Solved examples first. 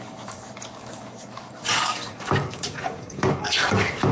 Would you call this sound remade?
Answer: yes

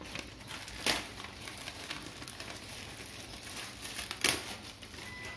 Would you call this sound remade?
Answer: no